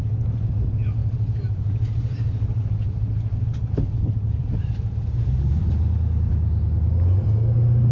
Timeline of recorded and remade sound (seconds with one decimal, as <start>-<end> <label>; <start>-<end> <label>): 0.0-1.0 recorded; 1.0-5.7 remade; 5.7-7.9 recorded